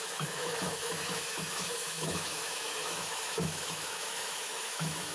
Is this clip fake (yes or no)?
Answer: yes